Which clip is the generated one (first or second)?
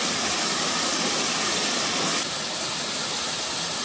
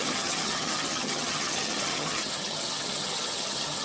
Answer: second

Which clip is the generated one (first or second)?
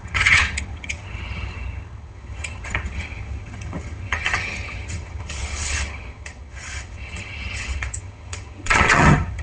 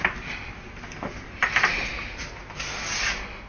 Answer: first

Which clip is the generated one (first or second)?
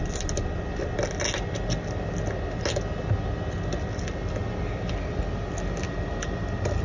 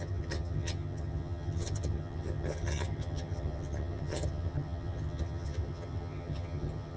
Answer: second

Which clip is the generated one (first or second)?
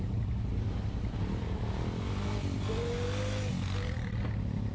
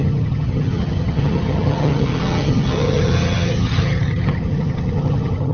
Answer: second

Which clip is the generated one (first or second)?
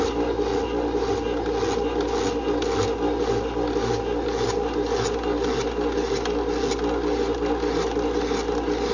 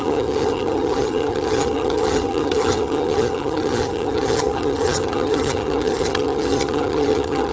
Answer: second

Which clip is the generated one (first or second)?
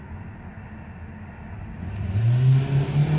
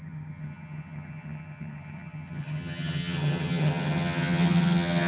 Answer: second